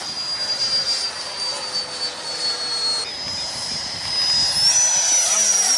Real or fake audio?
real